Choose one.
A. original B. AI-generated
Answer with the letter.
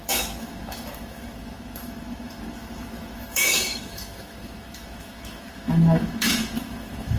B